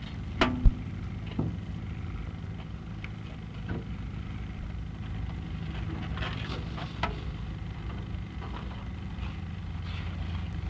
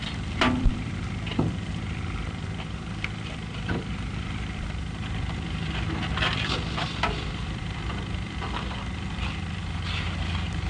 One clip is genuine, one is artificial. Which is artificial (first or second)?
second